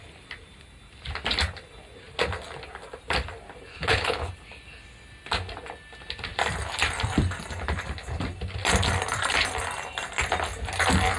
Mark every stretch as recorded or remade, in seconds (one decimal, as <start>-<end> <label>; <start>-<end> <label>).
0.0-3.7 recorded; 3.7-4.3 remade; 4.3-11.2 recorded